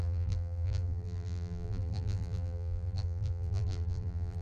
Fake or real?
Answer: fake